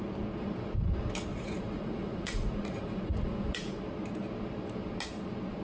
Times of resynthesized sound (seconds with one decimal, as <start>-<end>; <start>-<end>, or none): 1.3-3.8